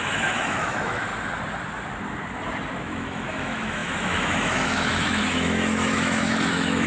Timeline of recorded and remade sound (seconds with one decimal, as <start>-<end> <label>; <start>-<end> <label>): 0.0-1.1 remade; 1.1-2.7 recorded; 2.7-6.9 remade